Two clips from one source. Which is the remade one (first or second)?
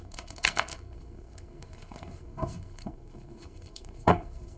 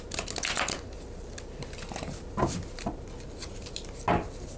first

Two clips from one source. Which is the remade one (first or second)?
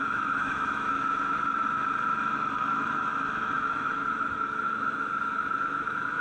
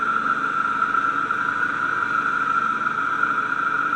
first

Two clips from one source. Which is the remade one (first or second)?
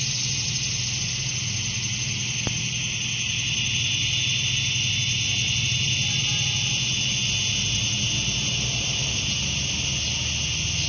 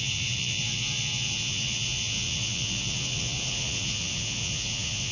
second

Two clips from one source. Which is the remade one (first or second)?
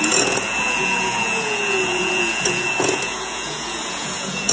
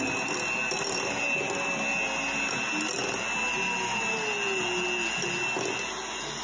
first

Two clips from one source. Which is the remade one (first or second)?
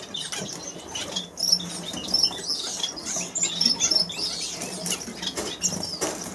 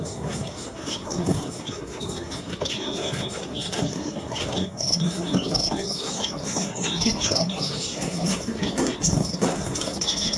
second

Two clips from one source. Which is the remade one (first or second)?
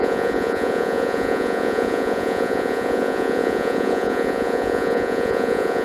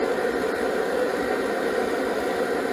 first